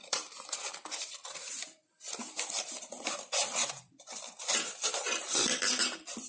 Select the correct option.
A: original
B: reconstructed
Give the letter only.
B